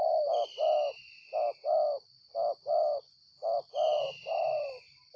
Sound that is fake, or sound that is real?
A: real